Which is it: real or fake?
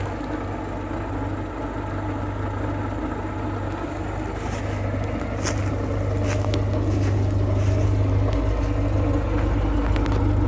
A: real